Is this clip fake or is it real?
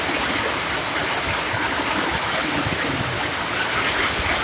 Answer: real